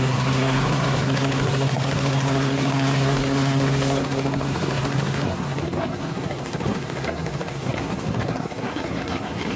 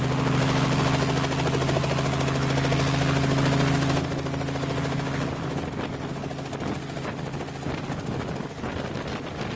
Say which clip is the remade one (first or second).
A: first